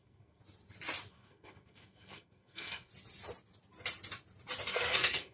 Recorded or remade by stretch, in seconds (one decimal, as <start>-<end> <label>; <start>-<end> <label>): 0.0-0.4 remade; 0.4-1.1 recorded; 1.1-2.9 remade; 2.9-4.7 recorded; 4.7-5.3 remade